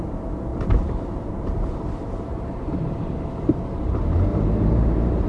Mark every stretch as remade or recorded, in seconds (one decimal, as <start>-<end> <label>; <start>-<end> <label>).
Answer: 0.0-0.5 recorded; 0.5-3.7 remade; 3.7-4.3 recorded; 4.3-5.3 remade